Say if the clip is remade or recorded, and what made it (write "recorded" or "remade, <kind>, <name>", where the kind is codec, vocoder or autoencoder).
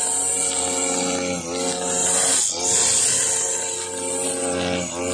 recorded